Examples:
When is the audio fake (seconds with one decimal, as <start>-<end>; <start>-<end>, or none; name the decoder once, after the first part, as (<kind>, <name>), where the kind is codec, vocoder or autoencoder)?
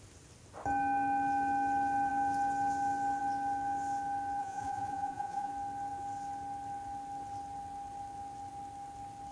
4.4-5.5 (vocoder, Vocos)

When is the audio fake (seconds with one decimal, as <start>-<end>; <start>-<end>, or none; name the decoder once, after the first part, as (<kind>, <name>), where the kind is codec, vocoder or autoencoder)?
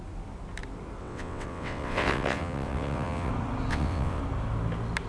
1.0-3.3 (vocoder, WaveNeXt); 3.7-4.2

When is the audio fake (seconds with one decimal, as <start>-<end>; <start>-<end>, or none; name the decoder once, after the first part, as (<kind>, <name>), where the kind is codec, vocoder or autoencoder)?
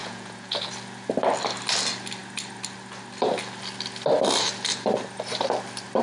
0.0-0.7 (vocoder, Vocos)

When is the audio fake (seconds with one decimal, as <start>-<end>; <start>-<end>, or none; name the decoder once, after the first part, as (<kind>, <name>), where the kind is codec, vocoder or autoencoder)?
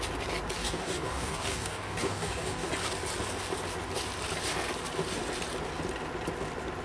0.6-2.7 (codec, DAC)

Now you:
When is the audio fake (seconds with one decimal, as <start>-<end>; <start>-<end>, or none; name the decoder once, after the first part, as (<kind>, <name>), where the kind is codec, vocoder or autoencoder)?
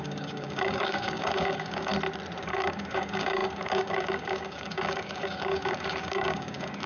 0.0-1.9 (codec, DAC); 2.4-6.9